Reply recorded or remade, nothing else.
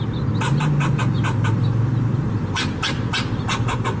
recorded